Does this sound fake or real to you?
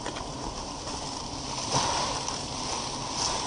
real